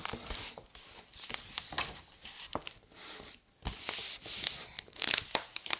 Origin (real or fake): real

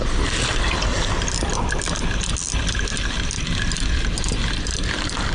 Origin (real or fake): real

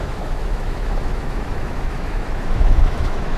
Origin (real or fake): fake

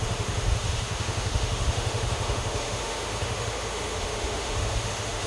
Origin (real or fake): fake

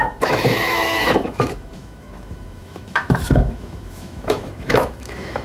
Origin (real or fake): fake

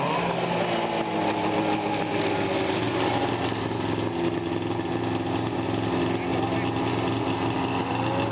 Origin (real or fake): real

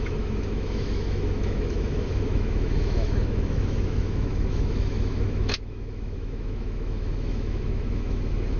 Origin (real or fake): fake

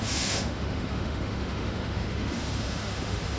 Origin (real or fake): fake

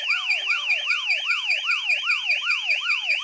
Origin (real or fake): fake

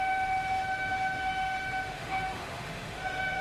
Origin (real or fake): fake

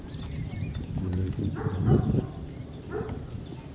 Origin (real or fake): real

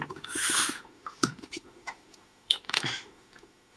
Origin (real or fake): fake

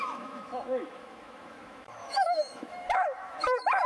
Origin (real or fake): fake